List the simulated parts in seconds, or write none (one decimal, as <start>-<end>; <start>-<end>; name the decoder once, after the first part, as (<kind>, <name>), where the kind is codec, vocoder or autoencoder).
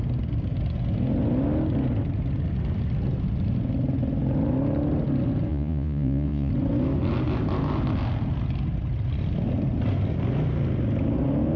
5.5-6.5 (vocoder, Vocos)